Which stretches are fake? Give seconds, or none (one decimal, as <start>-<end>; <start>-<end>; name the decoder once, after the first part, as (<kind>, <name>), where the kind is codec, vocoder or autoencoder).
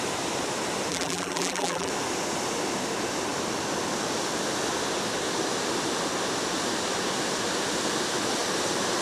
0.9-1.9 (vocoder, BigVGAN v2)